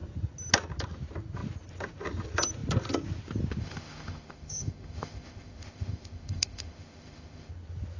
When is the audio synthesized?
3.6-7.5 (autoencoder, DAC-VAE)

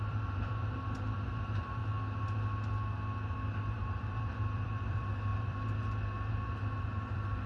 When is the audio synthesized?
0.0-1.8 (vocoder, BigVGAN v2); 3.6-7.5

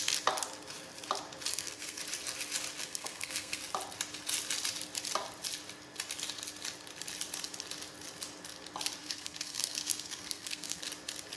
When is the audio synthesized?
1.5-2.0 (codec, SNAC); 2.8-3.6; 9.0-10.8

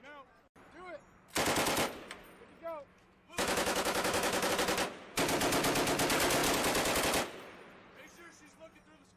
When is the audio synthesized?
2.9-4.5 (autoencoder, DAC-VAE)

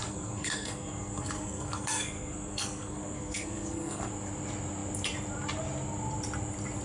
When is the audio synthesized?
0.0-4.1 (codec, SNAC)

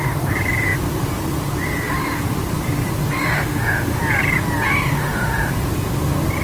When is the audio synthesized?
3.2-4.0 (autoencoder, DAC-VAE); 4.9-5.5

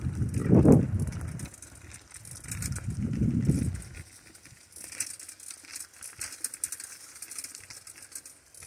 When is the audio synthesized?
none